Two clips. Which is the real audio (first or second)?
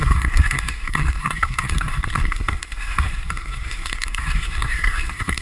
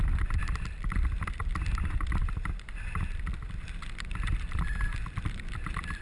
second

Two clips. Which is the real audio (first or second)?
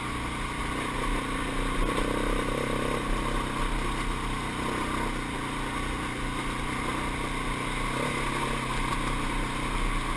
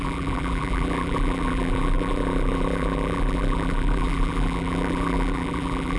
first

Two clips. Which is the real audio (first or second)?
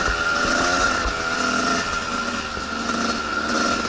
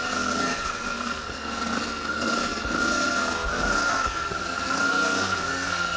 first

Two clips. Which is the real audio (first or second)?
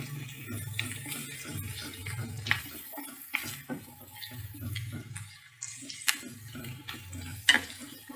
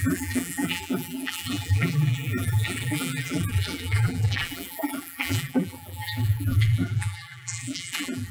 first